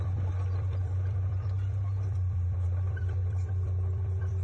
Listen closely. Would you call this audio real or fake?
fake